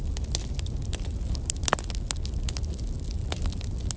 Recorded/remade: recorded